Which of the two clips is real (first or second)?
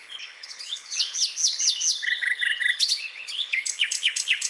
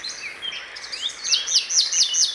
second